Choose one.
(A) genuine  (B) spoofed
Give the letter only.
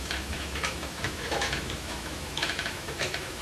B